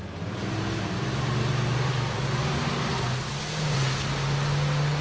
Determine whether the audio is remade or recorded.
recorded